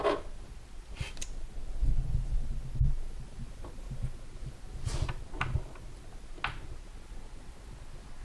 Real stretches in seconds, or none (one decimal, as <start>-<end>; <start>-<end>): 0.0-8.2